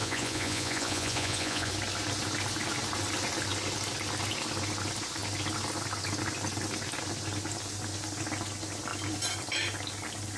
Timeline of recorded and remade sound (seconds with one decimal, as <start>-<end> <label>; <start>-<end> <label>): 0.0-1.7 remade; 1.7-10.4 recorded